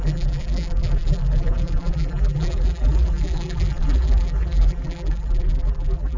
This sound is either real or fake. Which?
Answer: fake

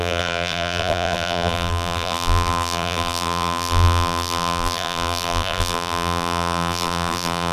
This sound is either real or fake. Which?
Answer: fake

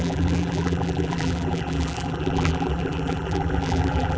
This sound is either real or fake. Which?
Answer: fake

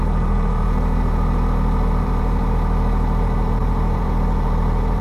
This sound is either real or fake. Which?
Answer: fake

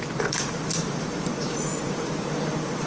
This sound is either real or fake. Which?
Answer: fake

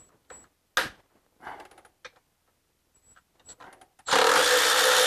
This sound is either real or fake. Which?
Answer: real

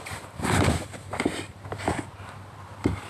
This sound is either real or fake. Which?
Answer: fake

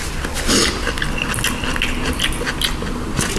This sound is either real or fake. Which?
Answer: real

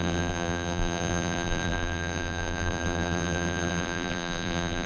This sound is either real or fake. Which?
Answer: fake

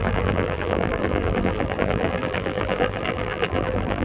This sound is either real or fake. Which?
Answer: fake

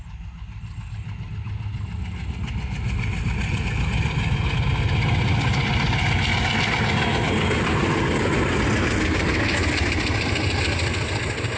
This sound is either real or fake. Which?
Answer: real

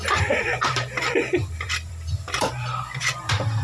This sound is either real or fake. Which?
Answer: fake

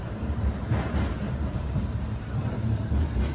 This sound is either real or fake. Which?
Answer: fake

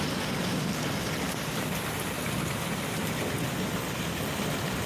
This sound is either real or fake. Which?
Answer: real